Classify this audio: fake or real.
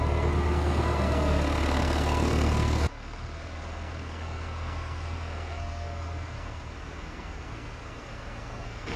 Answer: fake